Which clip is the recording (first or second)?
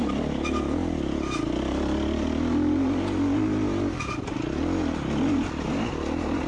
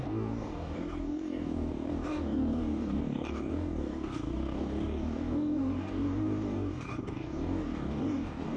first